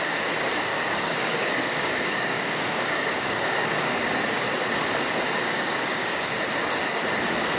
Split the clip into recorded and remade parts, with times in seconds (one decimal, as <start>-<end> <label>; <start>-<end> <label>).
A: 0.0-0.7 recorded; 0.7-4.1 remade; 4.1-5.4 recorded; 5.4-6.2 remade; 6.2-7.6 recorded